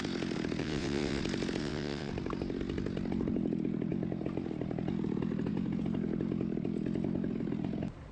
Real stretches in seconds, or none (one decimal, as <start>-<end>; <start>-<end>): 0.0-0.6; 1.2-1.6; 2.1-8.1